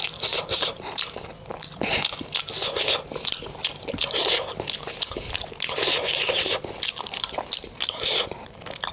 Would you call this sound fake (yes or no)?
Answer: no